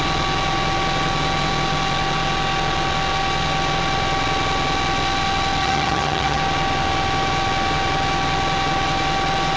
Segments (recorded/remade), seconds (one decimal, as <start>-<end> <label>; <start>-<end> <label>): 0.0-5.6 recorded; 5.6-6.4 remade; 6.4-9.6 recorded